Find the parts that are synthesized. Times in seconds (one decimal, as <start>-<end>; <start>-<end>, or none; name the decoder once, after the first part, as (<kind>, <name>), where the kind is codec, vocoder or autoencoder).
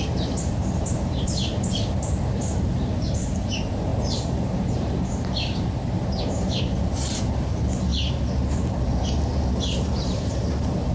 0.0-7.9 (vocoder, BigVGAN v2); 9.5-10.9